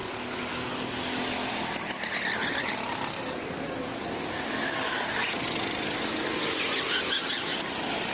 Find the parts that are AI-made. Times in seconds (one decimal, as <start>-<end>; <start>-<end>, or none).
none